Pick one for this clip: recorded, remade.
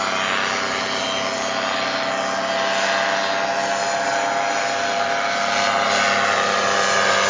recorded